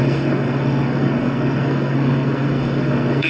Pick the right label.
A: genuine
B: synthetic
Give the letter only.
B